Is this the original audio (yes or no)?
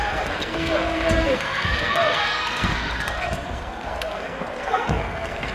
no